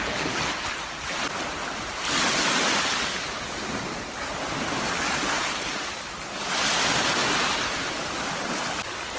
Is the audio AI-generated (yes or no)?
no